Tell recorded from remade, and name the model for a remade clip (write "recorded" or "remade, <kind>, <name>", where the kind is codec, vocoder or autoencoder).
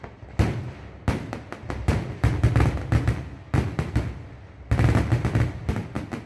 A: recorded